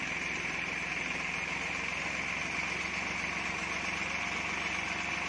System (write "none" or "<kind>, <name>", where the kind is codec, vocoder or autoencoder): none